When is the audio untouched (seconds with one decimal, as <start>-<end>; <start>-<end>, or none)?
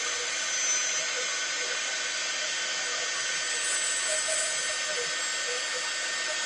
0.0-6.5